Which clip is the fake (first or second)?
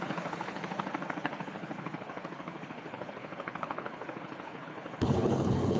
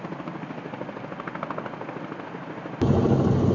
first